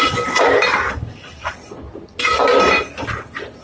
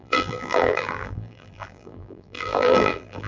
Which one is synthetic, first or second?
second